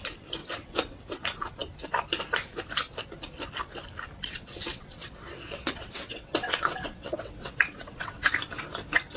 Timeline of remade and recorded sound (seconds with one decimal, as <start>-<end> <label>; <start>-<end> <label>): 0.0-0.4 recorded; 0.4-1.0 remade; 1.0-4.3 recorded; 4.3-8.2 remade; 8.2-9.2 recorded